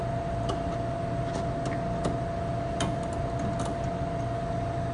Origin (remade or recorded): recorded